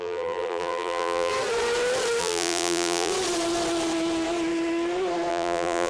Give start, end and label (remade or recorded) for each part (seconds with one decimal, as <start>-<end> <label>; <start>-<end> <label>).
0.0-1.3 remade; 1.3-2.2 recorded; 2.2-3.1 remade; 3.1-5.3 recorded; 5.3-5.9 remade